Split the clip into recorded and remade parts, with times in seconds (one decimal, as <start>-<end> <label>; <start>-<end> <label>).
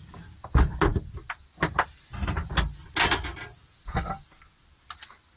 0.0-5.4 recorded